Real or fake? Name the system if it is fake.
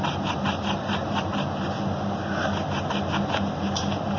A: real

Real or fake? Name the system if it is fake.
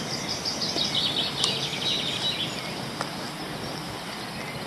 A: real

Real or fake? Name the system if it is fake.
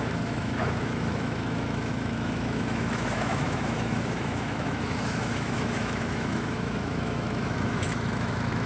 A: fake, autoencoder, DAC-VAE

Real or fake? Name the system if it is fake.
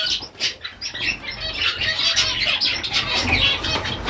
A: real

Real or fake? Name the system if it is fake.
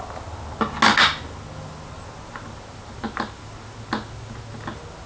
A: real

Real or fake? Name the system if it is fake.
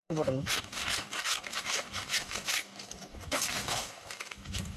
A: fake, codec, DAC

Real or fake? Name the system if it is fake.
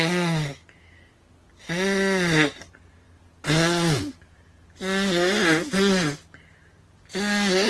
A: real